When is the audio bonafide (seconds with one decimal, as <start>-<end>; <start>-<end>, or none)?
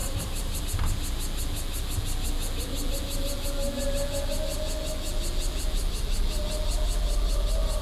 0.6-7.8